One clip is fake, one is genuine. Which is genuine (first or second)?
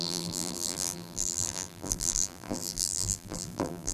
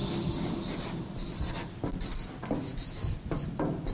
second